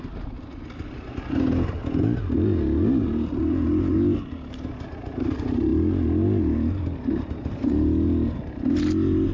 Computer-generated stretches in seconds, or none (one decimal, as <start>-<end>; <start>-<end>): none

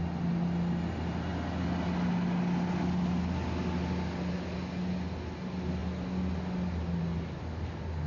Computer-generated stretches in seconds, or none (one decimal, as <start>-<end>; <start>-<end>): none

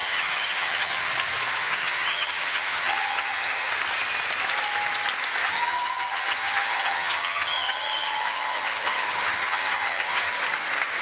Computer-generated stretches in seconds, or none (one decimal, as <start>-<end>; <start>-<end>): 0.0-1.1; 1.6-3.7; 5.4-10.3